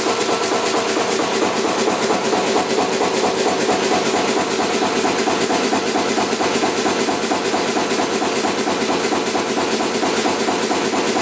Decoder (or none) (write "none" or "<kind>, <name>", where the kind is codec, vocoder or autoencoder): none